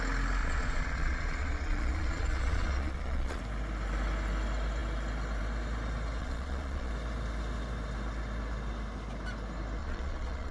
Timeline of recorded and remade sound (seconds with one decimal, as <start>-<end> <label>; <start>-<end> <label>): 0.0-0.4 recorded; 0.4-3.4 remade; 3.4-6.2 recorded; 6.2-6.9 remade; 6.9-9.8 recorded; 9.8-10.5 remade